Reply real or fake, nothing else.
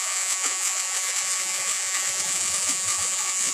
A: fake